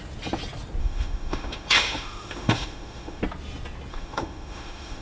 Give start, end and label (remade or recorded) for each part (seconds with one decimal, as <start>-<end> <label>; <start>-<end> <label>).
0.0-0.8 recorded; 0.8-3.2 remade; 3.2-3.9 recorded; 3.9-5.0 remade